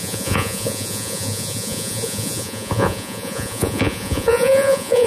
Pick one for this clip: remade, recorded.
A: remade